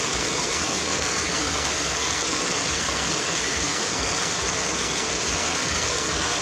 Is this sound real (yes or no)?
no